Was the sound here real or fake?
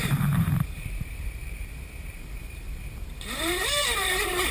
fake